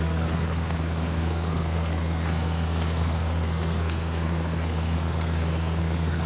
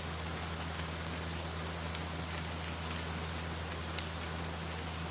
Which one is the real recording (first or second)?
second